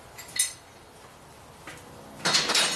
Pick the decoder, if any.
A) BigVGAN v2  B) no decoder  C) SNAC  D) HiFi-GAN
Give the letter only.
B